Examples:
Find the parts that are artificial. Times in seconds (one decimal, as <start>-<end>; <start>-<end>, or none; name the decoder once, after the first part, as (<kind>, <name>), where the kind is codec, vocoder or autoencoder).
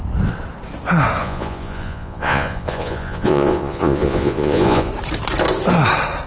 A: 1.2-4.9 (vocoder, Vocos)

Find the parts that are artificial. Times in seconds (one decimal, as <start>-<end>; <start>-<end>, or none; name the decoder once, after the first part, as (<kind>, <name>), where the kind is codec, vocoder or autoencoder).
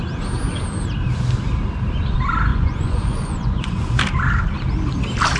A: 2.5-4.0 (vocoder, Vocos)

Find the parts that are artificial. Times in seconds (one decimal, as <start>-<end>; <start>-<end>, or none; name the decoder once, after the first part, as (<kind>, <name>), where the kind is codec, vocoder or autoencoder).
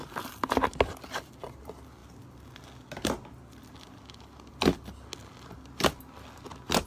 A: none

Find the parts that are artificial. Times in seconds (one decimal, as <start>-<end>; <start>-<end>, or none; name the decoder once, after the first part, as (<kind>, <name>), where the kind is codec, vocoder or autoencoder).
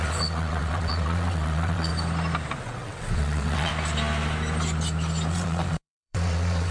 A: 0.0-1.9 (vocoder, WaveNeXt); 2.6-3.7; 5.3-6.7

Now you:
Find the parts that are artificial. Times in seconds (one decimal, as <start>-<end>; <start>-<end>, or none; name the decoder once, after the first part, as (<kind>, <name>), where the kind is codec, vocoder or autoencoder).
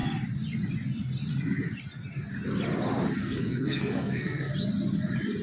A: 3.2-4.5 (codec, SNAC)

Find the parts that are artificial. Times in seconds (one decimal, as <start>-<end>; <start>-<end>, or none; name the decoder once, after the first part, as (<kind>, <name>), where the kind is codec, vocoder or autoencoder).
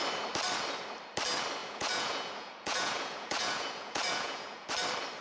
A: 1.6-4.7 (vocoder, Vocos)